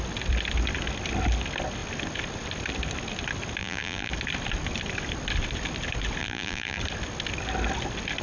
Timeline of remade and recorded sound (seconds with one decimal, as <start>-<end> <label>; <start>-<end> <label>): 0.0-3.6 recorded; 3.6-4.1 remade; 4.1-6.2 recorded; 6.2-6.8 remade; 6.8-8.2 recorded